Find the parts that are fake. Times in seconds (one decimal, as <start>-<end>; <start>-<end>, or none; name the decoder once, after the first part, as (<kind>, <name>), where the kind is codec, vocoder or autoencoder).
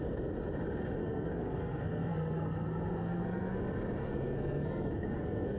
1.0-3.6 (codec, SNAC); 4.0-5.6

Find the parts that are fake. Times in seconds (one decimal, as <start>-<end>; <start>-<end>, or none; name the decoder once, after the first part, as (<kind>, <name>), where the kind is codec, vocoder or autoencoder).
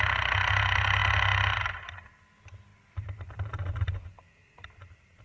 2.7-5.2 (vocoder, BigVGAN v2)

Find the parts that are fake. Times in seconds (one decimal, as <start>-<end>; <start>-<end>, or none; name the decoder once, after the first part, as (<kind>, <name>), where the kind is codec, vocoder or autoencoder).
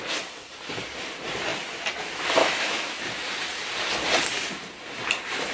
2.4-3.0 (autoencoder, DAC-VAE)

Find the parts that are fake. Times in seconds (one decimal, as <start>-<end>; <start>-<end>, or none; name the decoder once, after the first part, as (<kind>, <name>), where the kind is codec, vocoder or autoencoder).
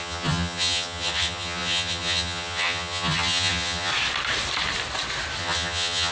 0.0-3.9 (vocoder, HiFi-GAN); 5.4-6.1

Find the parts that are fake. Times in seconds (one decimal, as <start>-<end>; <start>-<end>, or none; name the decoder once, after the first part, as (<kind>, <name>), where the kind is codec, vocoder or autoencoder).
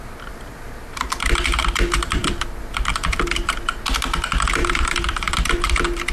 4.6-5.3 (vocoder, BigVGAN v2)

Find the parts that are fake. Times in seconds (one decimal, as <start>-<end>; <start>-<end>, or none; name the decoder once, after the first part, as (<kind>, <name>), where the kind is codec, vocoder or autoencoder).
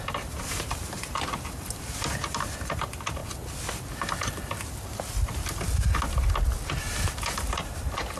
0.0-3.2 (vocoder, BigVGAN v2); 6.8-8.2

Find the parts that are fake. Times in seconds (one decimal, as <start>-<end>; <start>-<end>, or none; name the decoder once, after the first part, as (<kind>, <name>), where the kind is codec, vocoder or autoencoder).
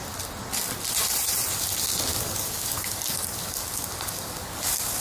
2.1-5.0 (codec, DAC)